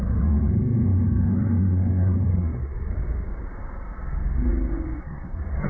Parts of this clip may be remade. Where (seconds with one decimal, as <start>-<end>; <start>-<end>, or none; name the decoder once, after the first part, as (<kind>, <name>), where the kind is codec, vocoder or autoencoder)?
0.0-2.9 (codec, SNAC); 5.0-5.7